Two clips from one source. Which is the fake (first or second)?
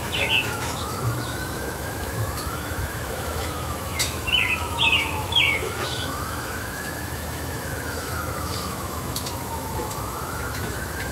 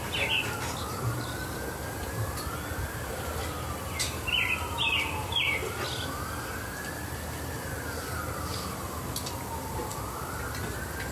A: first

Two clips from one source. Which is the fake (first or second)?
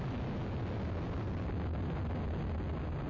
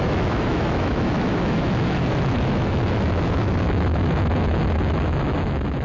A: second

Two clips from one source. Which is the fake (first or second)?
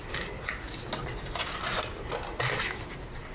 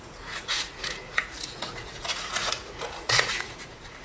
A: second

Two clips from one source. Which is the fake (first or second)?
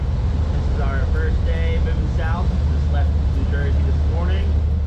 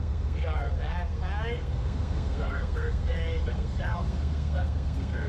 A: second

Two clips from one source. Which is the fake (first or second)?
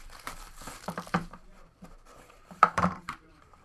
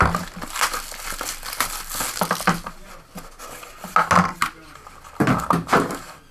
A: first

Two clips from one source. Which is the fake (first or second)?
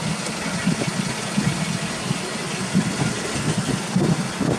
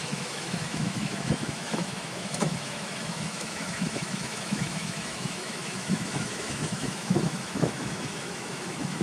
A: second